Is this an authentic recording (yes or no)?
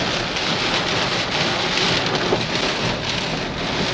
yes